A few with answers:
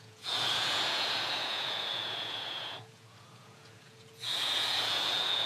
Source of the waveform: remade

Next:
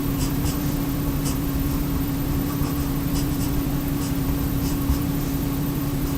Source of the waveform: remade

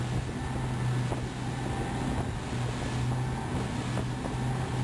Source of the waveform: recorded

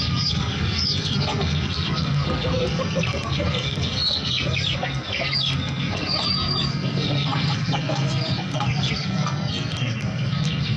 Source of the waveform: remade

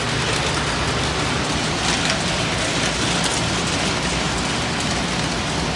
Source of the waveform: recorded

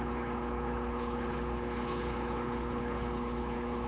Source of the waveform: remade